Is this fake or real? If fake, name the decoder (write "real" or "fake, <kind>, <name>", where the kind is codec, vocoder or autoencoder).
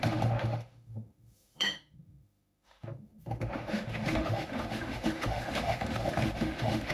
fake, autoencoder, DAC-VAE